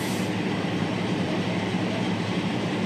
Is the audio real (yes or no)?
no